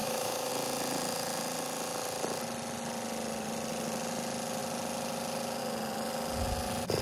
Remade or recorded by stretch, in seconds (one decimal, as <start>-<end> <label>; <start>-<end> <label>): 0.0-0.5 remade; 0.5-7.0 recorded